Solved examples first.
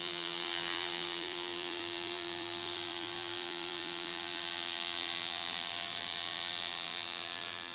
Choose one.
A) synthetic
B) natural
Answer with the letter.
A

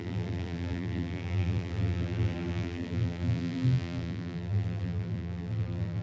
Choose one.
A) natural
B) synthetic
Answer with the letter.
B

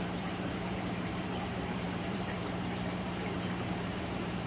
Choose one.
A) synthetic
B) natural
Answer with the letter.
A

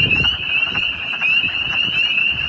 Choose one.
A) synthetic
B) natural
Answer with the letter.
A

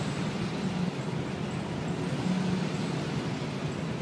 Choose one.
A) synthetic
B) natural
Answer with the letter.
B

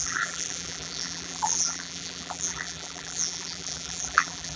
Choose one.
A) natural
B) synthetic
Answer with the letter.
B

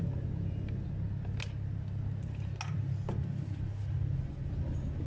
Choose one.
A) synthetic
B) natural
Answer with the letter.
B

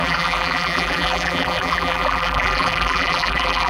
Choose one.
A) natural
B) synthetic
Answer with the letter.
B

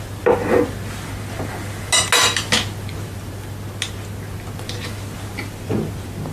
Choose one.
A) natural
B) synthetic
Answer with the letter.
A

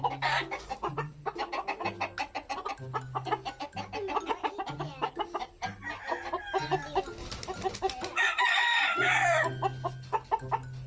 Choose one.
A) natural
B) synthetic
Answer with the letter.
A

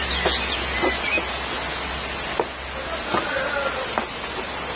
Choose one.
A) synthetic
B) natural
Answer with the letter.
B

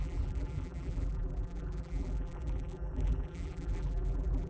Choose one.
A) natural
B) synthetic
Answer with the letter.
B